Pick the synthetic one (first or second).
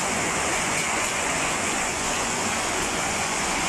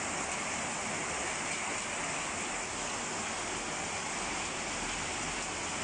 first